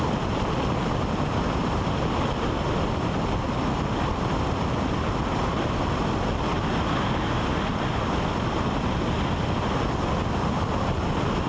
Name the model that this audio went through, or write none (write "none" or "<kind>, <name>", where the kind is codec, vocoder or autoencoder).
none